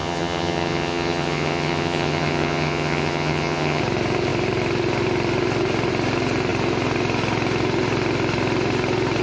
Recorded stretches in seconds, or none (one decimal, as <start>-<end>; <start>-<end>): 3.8-9.2